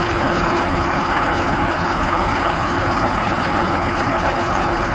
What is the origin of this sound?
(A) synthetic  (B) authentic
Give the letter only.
A